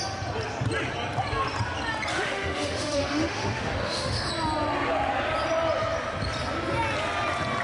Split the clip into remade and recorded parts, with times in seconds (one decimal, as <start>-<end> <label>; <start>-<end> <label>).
0.0-2.1 recorded; 2.1-4.3 remade; 4.3-7.6 recorded